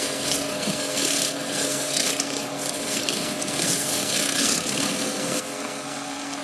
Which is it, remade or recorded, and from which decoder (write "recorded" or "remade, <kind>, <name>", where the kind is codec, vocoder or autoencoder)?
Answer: remade, codec, SNAC